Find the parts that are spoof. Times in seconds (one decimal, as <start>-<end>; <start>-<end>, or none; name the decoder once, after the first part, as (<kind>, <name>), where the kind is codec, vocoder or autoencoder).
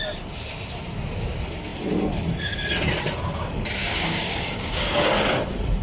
3.8-5.1 (codec, DAC)